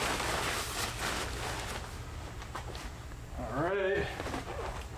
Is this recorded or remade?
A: recorded